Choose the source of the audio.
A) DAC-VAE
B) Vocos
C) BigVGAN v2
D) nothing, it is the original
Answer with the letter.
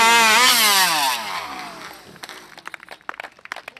D